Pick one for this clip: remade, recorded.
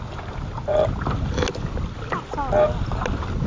recorded